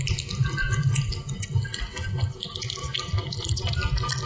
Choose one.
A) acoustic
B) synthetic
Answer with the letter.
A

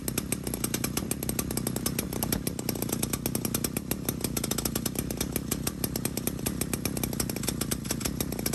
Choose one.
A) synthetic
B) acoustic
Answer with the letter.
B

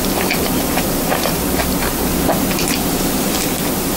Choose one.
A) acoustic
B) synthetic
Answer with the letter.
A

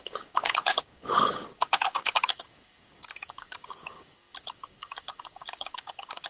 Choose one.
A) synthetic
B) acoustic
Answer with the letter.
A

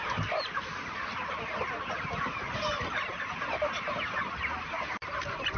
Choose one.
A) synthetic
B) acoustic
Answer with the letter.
A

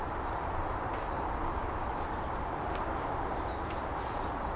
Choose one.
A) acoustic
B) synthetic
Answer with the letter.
B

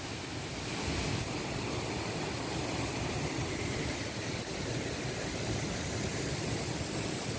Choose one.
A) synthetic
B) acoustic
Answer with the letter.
B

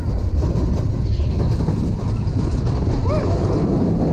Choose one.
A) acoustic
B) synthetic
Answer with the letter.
B